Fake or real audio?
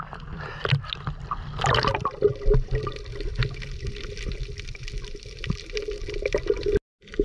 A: real